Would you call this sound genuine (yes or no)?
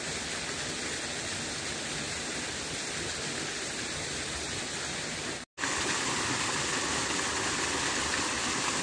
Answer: yes